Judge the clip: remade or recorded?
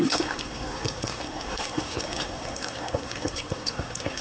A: remade